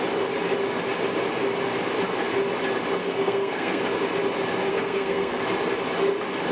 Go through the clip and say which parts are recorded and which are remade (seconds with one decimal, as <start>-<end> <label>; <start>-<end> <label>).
0.0-3.0 recorded; 3.0-3.8 remade; 3.8-4.7 recorded; 4.7-5.4 remade; 5.4-6.5 recorded